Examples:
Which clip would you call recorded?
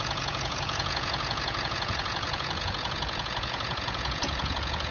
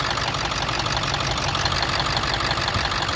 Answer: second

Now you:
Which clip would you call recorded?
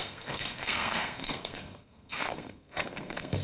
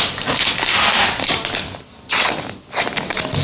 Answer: second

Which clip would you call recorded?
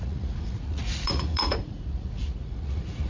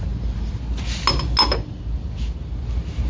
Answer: second